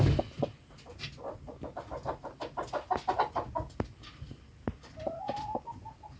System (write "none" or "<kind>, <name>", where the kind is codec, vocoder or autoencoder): none